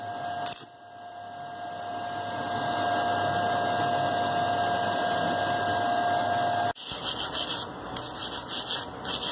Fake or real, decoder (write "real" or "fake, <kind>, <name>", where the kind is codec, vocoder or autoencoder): real